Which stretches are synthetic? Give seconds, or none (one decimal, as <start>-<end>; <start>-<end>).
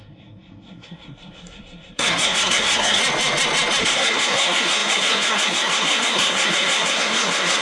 0.0-3.0; 3.8-7.6